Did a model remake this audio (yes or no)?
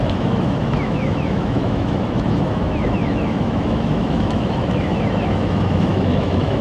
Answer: yes